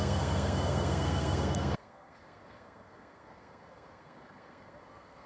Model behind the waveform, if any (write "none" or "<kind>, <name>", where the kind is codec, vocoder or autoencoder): codec, SNAC